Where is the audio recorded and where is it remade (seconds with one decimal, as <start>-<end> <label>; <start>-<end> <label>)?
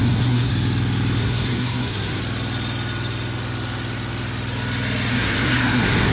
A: 0.0-0.5 remade; 0.5-1.2 recorded; 1.2-2.2 remade; 2.2-5.1 recorded; 5.1-6.1 remade